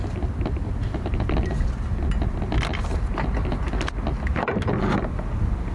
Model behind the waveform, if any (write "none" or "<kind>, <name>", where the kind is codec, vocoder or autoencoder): none